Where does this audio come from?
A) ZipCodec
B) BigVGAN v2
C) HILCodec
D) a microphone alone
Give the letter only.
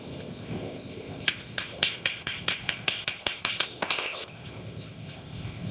A